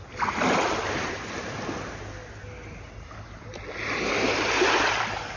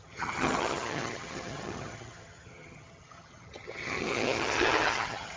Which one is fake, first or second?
second